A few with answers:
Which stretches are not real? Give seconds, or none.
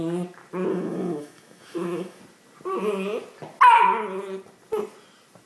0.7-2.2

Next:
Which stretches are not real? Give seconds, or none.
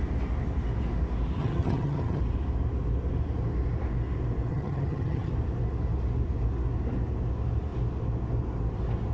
1.4-2.2; 4.5-5.3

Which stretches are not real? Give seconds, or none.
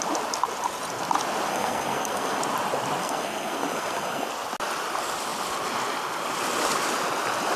1.5-2.4; 3.0-4.3